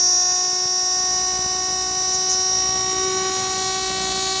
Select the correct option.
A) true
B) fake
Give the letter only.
A